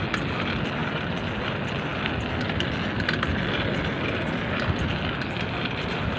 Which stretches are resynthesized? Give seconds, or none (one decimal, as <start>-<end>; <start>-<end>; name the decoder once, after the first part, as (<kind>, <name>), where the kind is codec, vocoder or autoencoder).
none